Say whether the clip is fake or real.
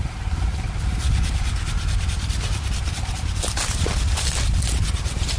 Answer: real